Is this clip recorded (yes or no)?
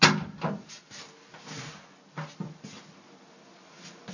yes